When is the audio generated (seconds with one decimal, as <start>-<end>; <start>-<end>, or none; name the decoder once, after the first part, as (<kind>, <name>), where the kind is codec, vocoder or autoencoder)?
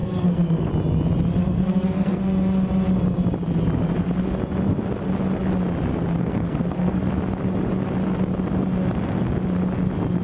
0.0-0.7 (codec, SNAC); 1.4-2.2; 6.2-7.1